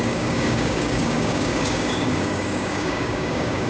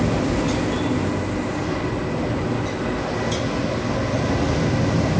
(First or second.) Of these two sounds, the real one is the second